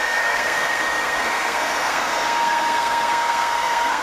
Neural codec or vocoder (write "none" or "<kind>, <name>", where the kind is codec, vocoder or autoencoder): codec, SNAC